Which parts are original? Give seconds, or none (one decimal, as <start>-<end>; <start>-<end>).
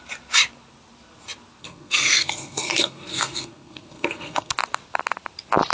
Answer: 0.0-1.6; 4.5-5.7